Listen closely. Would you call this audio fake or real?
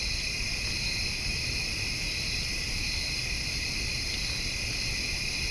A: real